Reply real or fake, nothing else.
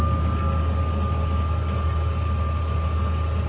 real